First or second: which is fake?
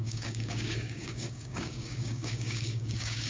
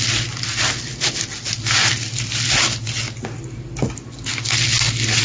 first